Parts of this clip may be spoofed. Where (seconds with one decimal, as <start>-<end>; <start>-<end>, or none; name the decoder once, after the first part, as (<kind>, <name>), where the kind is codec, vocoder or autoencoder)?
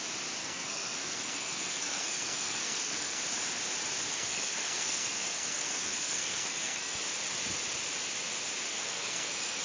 0.4-3.2 (codec, SNAC); 4.1-7.0; 8.7-9.6